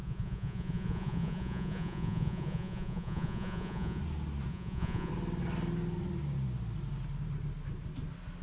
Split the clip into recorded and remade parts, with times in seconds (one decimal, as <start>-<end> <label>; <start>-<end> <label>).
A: 0.0-4.0 remade; 4.0-4.5 recorded; 4.5-5.1 remade; 5.1-8.4 recorded